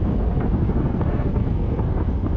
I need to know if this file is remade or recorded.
remade